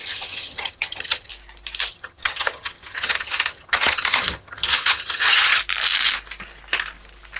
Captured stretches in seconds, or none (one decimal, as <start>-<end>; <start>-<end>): 1.3-1.9; 5.6-7.4